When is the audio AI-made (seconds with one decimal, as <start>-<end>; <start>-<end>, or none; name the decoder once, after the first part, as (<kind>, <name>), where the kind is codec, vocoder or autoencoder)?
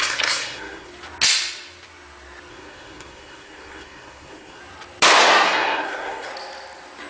0.0-0.9 (codec, SNAC); 2.5-4.6; 5.2-6.3